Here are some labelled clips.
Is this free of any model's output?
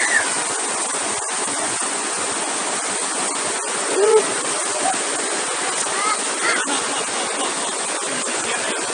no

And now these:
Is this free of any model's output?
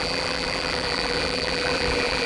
no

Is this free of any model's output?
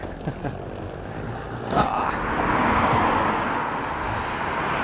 yes